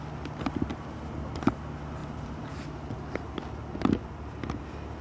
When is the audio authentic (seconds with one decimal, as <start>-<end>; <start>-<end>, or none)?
0.0-5.0